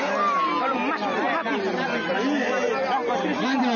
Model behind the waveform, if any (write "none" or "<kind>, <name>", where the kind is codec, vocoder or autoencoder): none